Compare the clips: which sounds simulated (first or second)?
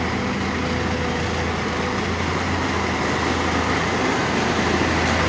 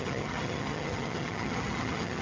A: second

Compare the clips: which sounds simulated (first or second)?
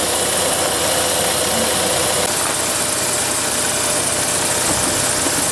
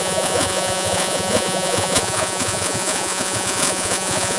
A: second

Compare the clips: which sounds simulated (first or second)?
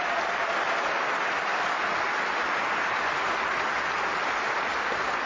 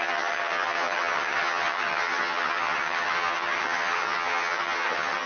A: second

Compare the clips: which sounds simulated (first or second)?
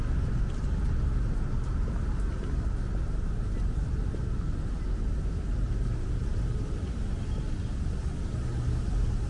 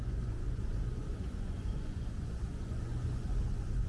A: second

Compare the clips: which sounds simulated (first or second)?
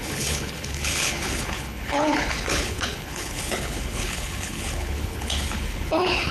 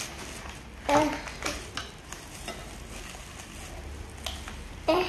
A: first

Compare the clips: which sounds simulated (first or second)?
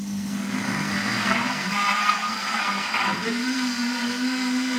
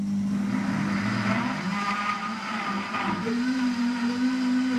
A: first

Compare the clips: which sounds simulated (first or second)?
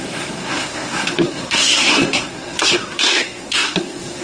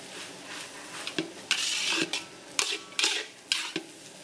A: first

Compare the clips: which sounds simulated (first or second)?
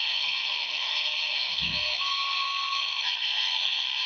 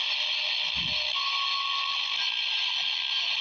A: first